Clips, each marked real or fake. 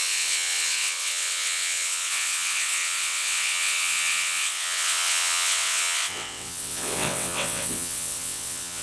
fake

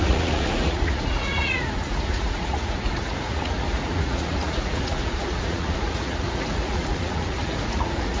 fake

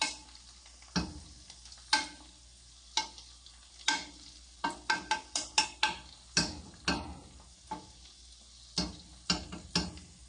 real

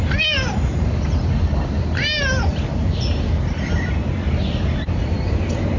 real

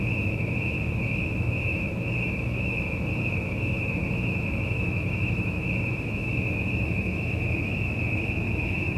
fake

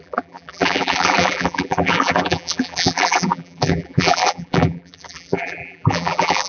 fake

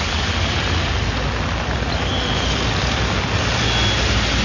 real